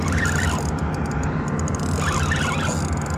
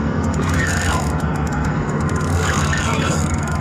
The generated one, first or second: second